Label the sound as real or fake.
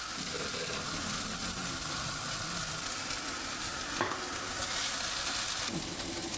real